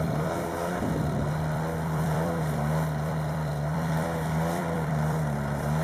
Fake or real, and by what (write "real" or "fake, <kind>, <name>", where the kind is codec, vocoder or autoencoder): fake, vocoder, BigVGAN v2